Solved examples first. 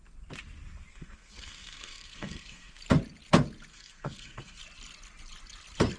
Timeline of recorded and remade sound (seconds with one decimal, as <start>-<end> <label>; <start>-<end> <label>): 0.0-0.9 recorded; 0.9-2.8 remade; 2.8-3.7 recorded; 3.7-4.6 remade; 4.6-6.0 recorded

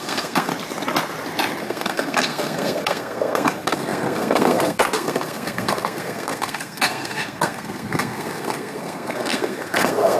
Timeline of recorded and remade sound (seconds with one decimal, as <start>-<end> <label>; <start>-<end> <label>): 0.0-0.5 remade; 0.5-1.6 recorded; 1.6-10.2 remade

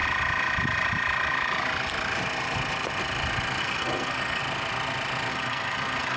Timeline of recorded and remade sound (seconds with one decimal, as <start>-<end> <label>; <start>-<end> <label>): 0.0-3.6 recorded; 3.6-4.4 remade; 4.4-5.3 recorded; 5.3-6.2 remade